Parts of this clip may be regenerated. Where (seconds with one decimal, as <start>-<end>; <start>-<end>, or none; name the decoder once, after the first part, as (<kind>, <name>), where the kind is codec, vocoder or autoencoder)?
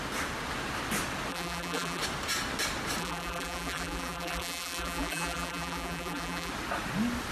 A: 1.3-2.0 (vocoder, BigVGAN v2); 3.0-6.5